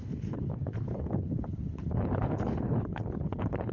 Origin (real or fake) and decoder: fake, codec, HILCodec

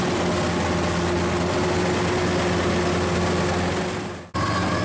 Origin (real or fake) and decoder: real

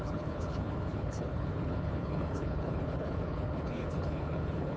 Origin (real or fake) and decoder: fake, codec, HILCodec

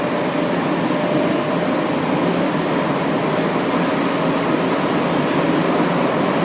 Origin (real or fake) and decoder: real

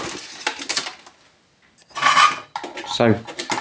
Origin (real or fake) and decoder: real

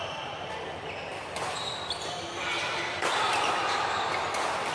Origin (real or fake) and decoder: real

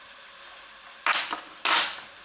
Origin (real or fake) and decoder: real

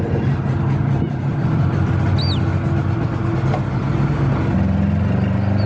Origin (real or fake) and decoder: real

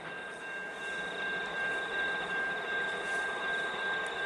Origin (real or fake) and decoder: real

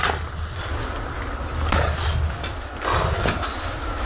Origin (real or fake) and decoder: real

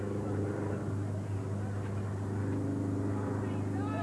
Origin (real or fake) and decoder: real